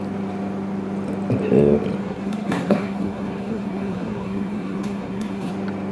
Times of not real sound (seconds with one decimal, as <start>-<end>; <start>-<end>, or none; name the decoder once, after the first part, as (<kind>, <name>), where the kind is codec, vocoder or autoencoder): 2.0-5.5 (codec, SNAC)